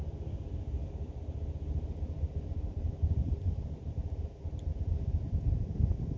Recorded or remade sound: recorded